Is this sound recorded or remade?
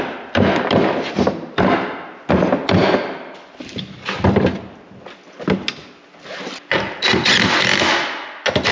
recorded